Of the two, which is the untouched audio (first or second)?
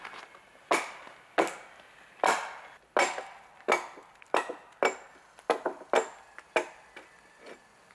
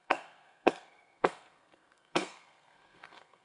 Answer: first